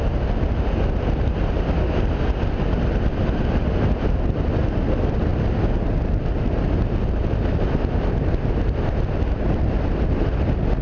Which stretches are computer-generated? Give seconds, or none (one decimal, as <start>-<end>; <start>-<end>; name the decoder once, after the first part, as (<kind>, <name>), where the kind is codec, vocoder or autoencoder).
none